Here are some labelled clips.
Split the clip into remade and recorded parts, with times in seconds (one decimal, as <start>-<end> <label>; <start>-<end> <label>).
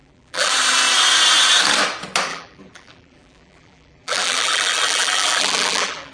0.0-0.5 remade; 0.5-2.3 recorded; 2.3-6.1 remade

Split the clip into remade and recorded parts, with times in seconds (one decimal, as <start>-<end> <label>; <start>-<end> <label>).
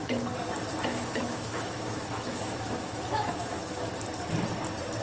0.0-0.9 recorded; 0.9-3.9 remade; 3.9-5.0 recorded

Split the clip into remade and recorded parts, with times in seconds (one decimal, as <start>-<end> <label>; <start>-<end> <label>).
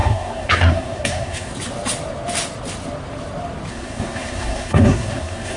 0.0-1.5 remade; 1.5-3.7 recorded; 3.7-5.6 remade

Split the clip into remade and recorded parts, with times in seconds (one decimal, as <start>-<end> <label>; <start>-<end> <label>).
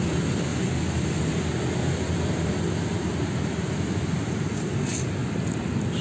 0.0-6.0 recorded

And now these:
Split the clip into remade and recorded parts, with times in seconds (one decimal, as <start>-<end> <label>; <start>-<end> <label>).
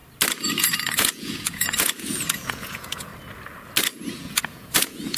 0.0-0.6 recorded; 0.6-3.1 remade; 3.1-4.2 recorded; 4.2-5.2 remade